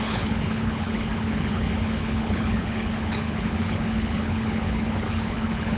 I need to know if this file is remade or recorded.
remade